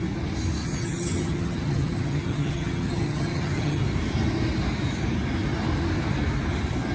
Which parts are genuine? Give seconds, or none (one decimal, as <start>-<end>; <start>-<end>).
0.0-0.6; 3.8-6.9